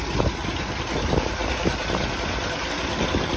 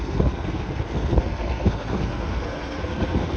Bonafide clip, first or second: first